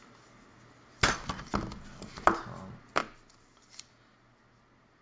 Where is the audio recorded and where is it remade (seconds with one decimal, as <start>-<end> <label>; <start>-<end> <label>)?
0.0-5.0 recorded